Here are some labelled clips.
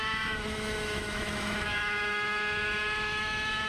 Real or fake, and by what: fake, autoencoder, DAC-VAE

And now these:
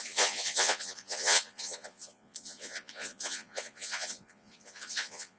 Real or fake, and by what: fake, vocoder, Vocos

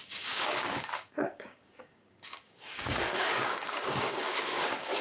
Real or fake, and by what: fake, codec, DAC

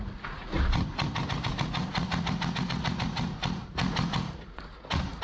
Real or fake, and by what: fake, vocoder, Vocos